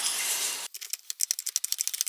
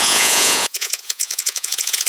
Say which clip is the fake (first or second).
second